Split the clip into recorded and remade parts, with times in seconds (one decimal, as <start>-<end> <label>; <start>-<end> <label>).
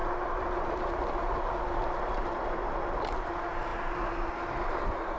0.0-2.7 remade; 2.7-5.2 recorded